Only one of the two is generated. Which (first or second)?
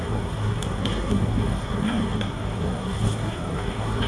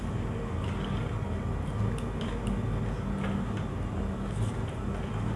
first